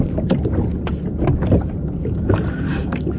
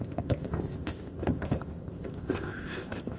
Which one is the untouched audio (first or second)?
first